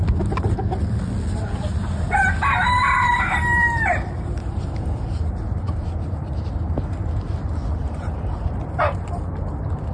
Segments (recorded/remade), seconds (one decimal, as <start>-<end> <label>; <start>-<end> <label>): 0.0-3.1 recorded; 3.1-6.1 remade; 6.1-7.6 recorded; 7.6-8.6 remade; 8.6-9.9 recorded

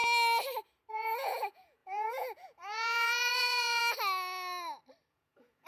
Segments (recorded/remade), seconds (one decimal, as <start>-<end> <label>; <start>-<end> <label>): 0.0-0.9 recorded; 0.9-3.8 remade; 3.8-5.1 recorded; 5.1-5.7 remade

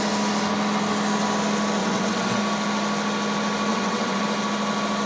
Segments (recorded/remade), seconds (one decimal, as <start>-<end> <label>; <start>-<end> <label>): 0.0-1.8 recorded; 1.8-2.4 remade; 2.4-3.7 recorded; 3.7-4.2 remade; 4.2-5.1 recorded

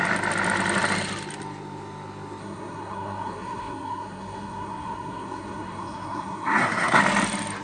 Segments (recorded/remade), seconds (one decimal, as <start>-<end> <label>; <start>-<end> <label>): 0.0-2.4 recorded; 2.4-7.0 remade; 7.0-7.6 recorded

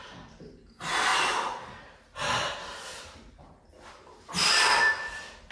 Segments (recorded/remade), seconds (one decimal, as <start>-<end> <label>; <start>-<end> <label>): 0.0-1.1 remade; 1.1-3.9 recorded; 3.9-5.5 remade

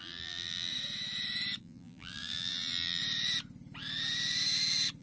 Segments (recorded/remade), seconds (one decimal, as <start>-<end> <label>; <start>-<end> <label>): 0.0-0.7 remade; 0.7-1.6 recorded; 1.6-3.0 remade; 3.0-5.0 recorded